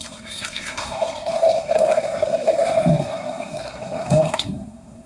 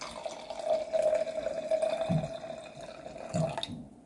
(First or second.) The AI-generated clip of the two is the first